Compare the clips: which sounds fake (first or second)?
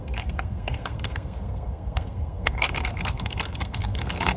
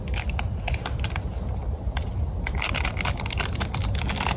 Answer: first